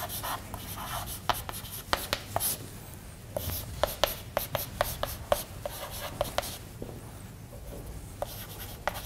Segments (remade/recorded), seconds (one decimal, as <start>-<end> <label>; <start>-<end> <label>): 0.0-9.1 recorded